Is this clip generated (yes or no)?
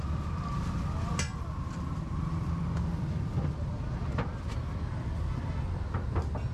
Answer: no